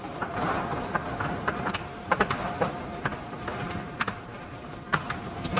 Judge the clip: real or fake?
fake